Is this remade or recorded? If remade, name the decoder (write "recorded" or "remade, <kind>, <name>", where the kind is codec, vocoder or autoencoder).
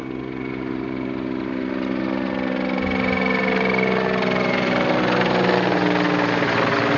recorded